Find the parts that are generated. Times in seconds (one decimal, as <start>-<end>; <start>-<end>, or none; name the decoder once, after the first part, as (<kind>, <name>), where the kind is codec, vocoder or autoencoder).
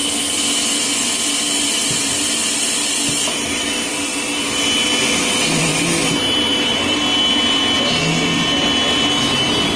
1.5-4.1 (vocoder, BigVGAN v2); 5.2-9.8